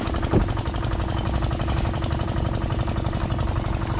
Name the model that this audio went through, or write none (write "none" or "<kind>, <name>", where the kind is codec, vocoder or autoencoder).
none